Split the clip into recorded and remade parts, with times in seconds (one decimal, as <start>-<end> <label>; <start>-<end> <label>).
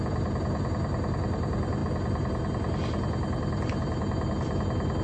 0.0-5.0 recorded